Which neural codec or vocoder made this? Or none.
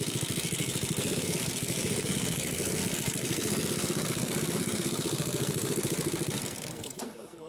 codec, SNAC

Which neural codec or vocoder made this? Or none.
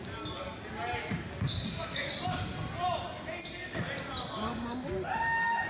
none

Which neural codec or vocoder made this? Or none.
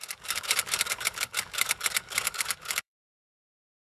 codec, DAC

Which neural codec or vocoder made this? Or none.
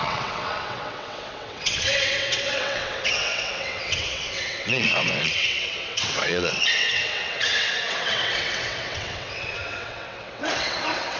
vocoder, WaveNeXt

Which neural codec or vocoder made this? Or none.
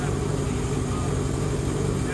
none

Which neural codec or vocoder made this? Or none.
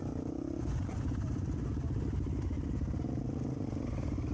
none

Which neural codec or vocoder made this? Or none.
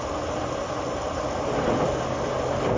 none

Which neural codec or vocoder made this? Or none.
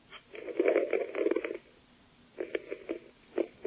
none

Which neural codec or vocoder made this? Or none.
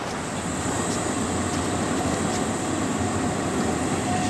none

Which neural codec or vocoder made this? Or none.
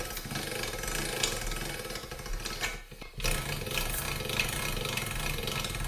none